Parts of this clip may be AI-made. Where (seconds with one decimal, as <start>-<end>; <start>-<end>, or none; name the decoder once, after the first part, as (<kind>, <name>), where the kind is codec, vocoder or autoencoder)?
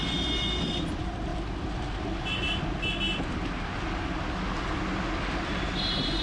none